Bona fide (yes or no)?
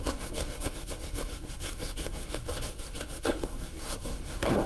no